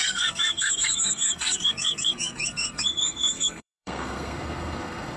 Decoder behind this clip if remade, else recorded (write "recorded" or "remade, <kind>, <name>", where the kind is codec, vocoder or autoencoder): remade, codec, SNAC